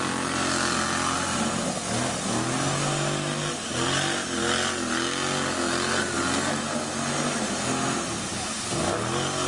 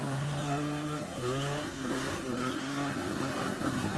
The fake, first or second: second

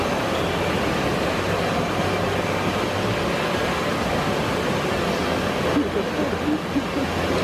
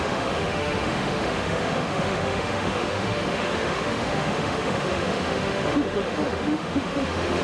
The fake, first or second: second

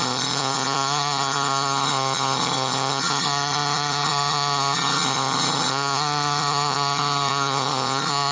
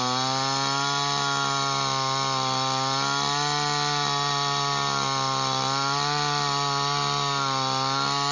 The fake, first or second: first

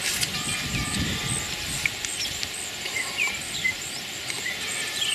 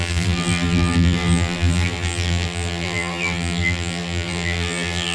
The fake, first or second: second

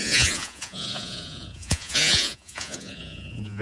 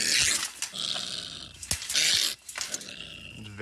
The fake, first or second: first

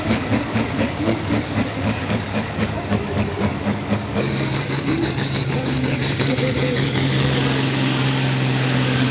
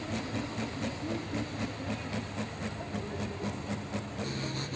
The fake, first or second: first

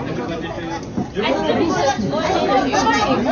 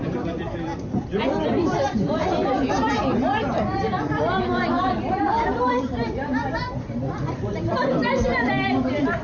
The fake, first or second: second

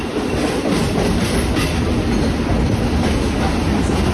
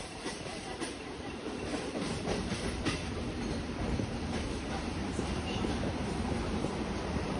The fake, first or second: second